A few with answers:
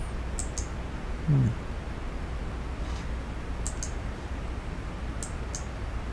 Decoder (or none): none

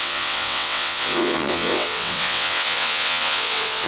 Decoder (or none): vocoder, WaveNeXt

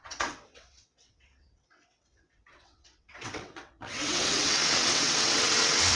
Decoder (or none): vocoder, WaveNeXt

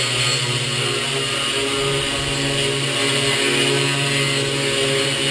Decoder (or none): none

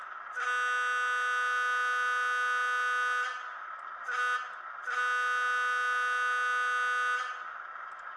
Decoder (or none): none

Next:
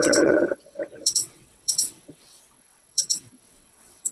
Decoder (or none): vocoder, WaveNeXt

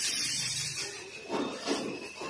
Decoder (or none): none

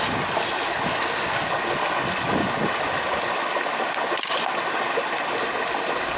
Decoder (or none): none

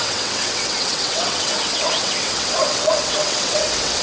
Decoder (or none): vocoder, WaveNeXt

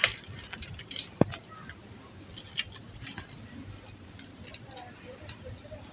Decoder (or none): none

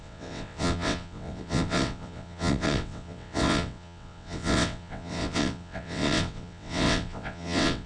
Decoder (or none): vocoder, WaveNeXt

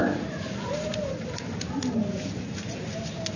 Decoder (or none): none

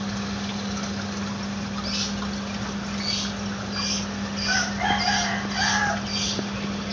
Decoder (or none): none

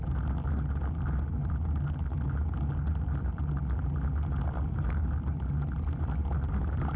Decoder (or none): none